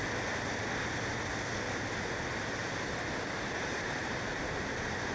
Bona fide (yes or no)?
yes